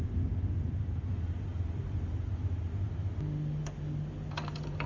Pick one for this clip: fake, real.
real